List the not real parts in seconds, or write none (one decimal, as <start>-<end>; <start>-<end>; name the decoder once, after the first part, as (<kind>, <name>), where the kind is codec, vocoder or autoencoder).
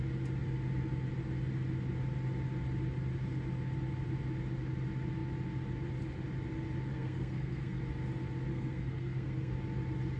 6.9-7.8 (codec, SNAC); 8.5-9.5